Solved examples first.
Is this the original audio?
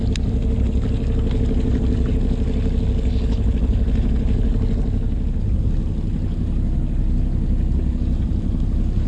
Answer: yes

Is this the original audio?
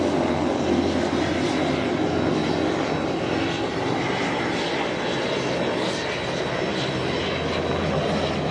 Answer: yes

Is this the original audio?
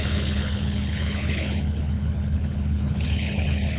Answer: no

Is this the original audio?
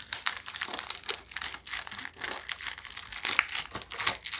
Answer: yes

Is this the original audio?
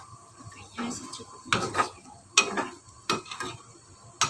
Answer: yes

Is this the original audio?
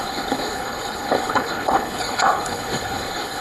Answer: no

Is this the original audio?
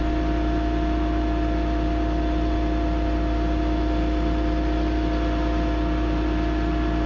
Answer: yes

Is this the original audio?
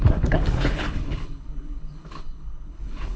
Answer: no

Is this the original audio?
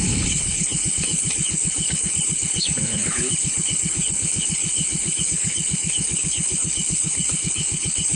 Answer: no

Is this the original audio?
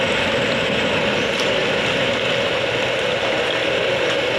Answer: yes